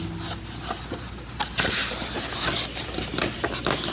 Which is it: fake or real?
real